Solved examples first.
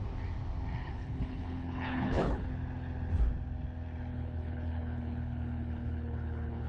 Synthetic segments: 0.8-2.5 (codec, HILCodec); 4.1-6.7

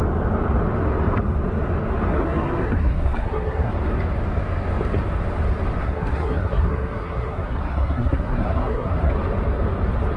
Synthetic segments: 2.1-3.7 (codec, SNAC); 5.8-9.1

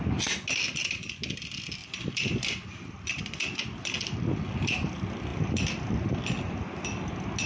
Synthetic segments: 1.8-3.6 (vocoder, BigVGAN v2); 5.3-7.1

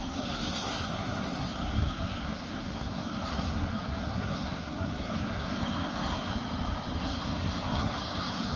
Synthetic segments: 0.0-6.3 (codec, SNAC); 7.0-8.6

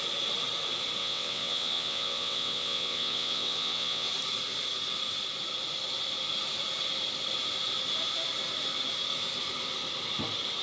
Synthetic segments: 1.0-4.1 (vocoder, WaveNeXt)